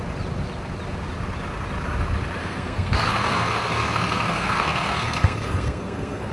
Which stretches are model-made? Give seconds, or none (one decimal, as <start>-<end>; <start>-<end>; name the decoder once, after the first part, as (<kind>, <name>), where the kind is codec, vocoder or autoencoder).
2.4-6.3 (codec, SNAC)